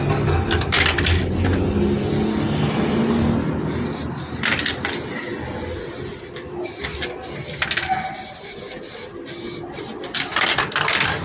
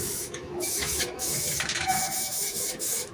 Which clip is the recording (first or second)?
first